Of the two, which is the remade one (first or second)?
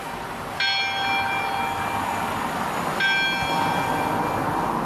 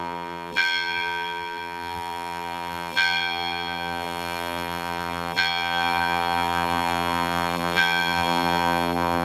second